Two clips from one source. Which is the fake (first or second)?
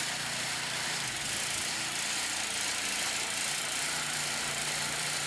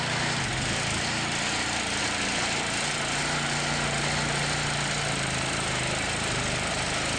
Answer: first